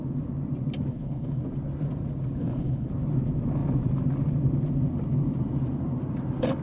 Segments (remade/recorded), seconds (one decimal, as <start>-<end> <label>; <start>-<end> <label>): 0.0-0.9 recorded; 0.9-1.4 remade; 1.4-2.4 recorded; 2.4-2.9 remade; 2.9-6.6 recorded

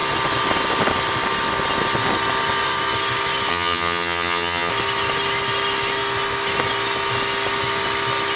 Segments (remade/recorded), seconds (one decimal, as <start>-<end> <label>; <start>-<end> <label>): 0.0-3.5 recorded; 3.5-4.7 remade; 4.7-8.4 recorded